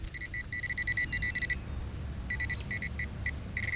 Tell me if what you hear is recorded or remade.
recorded